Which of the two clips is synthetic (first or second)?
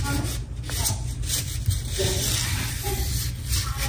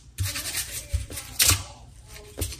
second